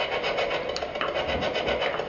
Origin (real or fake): real